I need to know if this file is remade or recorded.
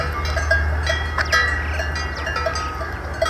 recorded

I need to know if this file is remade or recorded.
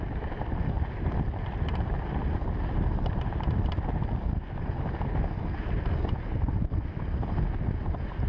recorded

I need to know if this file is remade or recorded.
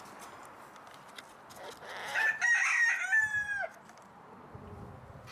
recorded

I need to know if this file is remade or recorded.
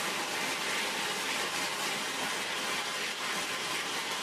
recorded